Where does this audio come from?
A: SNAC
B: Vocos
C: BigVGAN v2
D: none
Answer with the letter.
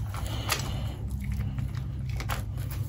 D